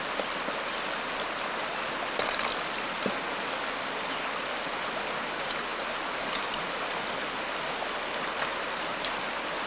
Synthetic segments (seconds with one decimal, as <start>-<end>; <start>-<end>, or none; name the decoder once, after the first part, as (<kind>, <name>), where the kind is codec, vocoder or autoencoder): none